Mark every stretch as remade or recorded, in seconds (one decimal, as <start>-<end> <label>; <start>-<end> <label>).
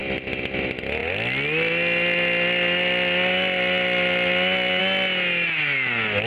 0.0-6.3 recorded